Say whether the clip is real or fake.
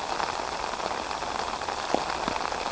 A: real